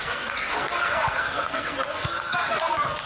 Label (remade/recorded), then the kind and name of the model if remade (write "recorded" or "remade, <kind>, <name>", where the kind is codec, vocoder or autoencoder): remade, codec, SNAC